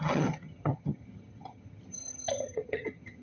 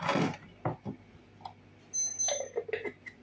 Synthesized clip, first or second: first